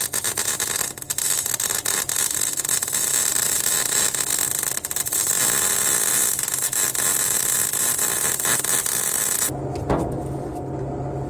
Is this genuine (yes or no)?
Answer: yes